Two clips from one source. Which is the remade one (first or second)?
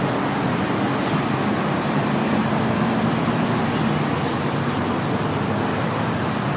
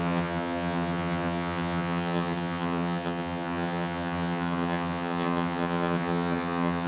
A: second